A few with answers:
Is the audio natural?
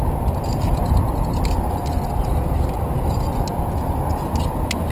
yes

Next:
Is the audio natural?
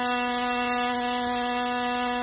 yes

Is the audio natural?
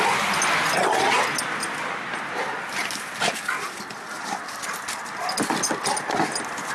yes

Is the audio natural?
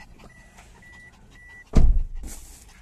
yes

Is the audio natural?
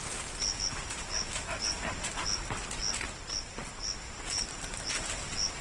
yes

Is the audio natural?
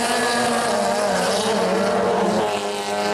yes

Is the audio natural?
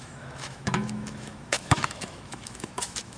no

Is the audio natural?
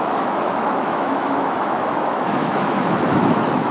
no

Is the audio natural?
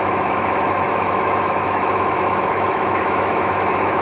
no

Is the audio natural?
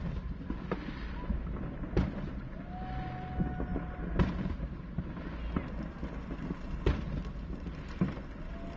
yes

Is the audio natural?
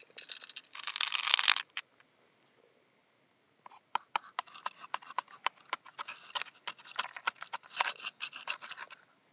yes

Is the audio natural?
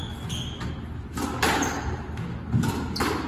yes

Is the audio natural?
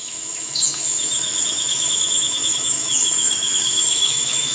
no